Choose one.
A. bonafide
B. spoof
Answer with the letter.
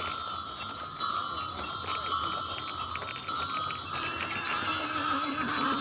A